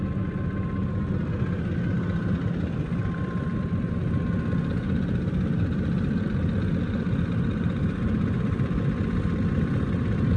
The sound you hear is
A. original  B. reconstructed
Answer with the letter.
A